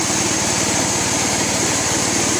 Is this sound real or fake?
fake